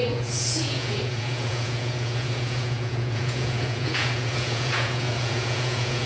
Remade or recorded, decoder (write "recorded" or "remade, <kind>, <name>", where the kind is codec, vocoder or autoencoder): remade, vocoder, Vocos